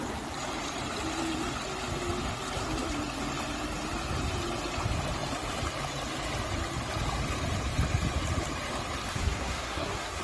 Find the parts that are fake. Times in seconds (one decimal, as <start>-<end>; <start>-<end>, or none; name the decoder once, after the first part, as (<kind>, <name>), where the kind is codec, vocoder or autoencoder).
9.1-10.2 (codec, SNAC)